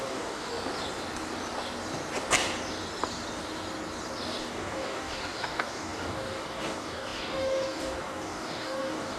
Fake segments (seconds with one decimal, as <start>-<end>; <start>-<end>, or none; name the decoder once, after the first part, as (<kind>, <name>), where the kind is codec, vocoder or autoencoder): 0.0-0.5 (codec, DAC); 4.4-9.2